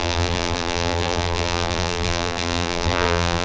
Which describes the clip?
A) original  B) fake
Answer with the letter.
B